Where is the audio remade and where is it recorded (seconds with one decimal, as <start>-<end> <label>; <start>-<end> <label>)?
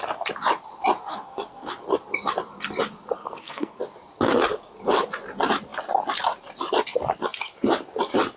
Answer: 0.0-1.1 recorded; 1.1-1.7 remade; 1.7-3.2 recorded; 3.2-3.8 remade; 3.8-8.4 recorded